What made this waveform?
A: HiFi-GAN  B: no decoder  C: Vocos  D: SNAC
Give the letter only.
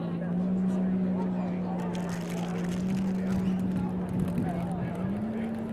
B